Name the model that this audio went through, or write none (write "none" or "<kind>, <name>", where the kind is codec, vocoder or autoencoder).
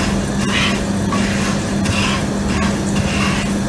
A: none